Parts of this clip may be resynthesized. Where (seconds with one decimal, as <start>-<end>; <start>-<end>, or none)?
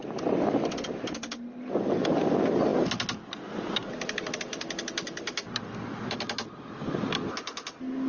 none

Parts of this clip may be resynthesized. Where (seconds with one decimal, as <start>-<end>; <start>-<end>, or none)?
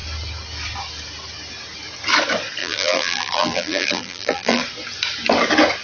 2.6-4.6